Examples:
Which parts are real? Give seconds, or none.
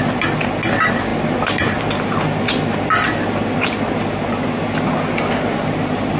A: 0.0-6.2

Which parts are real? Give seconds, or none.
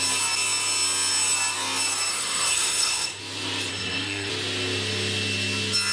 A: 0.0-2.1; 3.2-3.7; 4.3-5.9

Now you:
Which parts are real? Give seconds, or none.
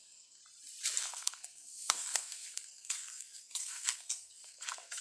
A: 0.4-1.0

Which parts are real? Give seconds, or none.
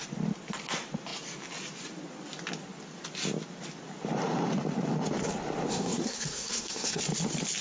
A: 0.0-5.7; 7.0-7.6